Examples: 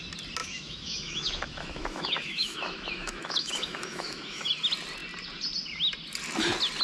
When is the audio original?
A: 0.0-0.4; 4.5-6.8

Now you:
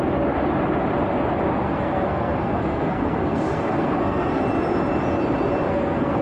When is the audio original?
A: 0.0-1.5; 4.4-5.7

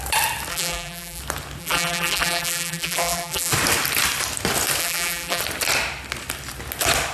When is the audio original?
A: 0.0-0.5; 1.2-1.6; 3.5-4.8; 5.4-7.1

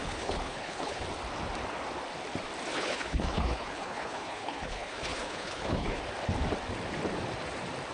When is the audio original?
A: 1.0-2.7; 6.0-7.9

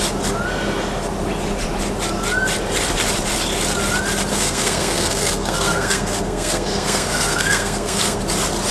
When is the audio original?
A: 0.0-4.3; 8.2-8.7

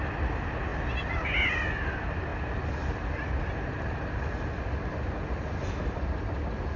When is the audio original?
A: 0.0-6.8

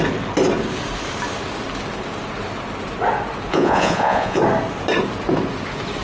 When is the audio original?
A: 0.0-3.5; 4.4-6.0